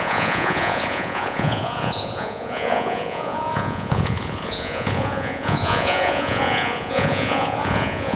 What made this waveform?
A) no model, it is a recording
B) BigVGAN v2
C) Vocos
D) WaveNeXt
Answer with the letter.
C